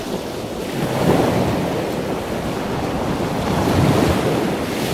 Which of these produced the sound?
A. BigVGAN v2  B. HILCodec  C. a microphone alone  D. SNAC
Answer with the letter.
C